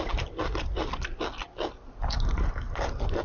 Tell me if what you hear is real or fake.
real